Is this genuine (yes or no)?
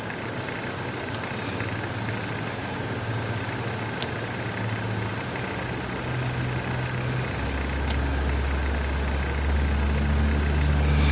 yes